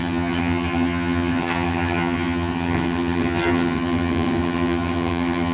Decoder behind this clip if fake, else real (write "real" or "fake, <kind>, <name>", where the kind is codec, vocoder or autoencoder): fake, vocoder, HiFi-GAN